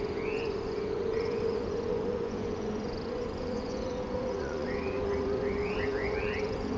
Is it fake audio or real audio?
fake